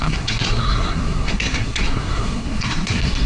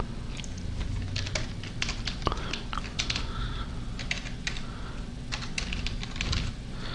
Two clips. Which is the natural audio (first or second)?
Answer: second